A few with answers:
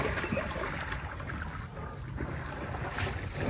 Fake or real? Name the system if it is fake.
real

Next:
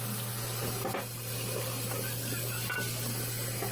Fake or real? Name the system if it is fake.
real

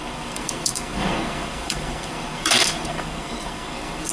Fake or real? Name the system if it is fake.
fake, codec, SNAC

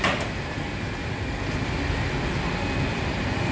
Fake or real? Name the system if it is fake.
real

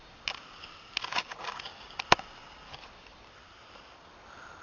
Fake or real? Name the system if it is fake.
real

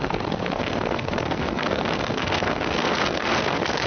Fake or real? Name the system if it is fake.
fake, codec, SNAC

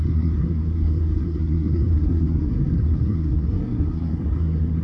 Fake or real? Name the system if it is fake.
fake, codec, SNAC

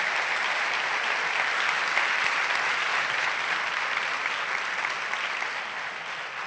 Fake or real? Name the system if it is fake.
real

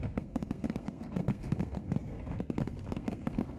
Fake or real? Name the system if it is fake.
fake, codec, SNAC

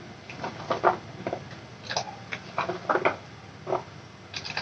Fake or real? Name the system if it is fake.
real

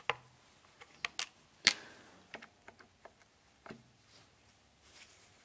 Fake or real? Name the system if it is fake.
real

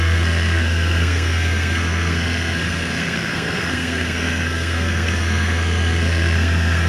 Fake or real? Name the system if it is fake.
fake, codec, SNAC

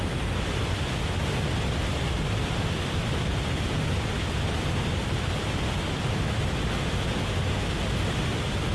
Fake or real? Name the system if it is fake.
real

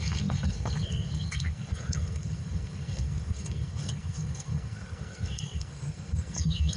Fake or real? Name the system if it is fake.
fake, codec, SNAC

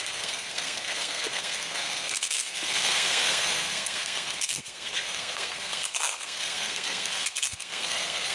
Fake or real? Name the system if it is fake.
fake, codec, SNAC